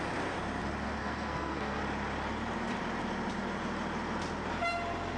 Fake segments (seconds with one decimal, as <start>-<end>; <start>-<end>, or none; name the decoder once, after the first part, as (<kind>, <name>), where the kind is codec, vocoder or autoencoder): 1.0-1.8 (codec, SNAC)